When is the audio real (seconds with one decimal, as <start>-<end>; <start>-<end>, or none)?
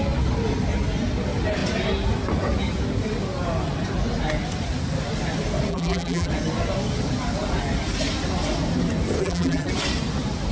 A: 0.0-5.7; 6.3-9.2; 9.7-10.5